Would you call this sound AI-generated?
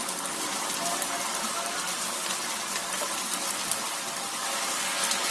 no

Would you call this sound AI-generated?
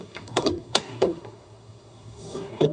yes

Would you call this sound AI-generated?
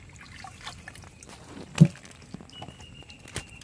no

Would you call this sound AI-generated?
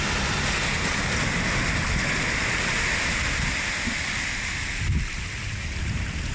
no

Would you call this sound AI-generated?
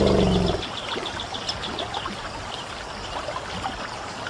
no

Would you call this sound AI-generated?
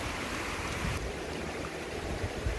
no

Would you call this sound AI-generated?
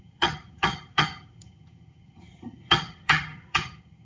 yes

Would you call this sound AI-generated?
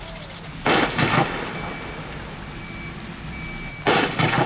no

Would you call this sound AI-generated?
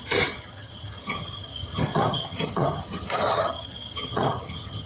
yes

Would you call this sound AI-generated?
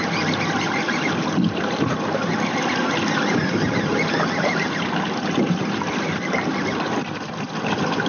yes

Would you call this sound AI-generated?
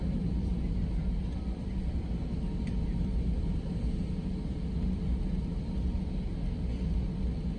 no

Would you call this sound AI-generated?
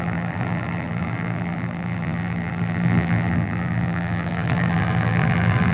yes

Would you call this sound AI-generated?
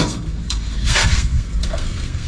yes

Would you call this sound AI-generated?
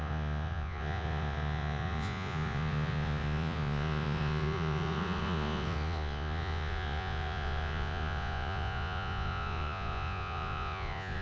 yes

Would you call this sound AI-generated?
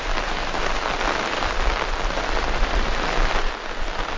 no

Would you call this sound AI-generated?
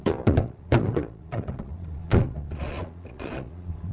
yes